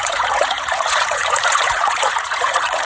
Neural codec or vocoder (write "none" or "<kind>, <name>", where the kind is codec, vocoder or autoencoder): vocoder, Vocos